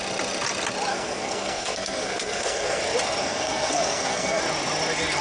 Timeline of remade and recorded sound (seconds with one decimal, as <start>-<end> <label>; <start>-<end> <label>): 0.0-0.9 recorded; 0.9-2.8 remade; 2.8-3.2 recorded; 3.2-4.4 remade; 4.4-5.2 recorded